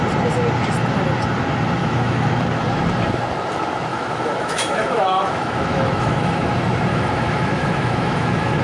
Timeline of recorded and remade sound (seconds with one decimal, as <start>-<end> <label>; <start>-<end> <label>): 0.0-1.8 recorded; 1.8-2.4 remade; 2.4-3.9 recorded; 3.9-6.5 remade; 6.5-6.9 recorded; 6.9-8.6 remade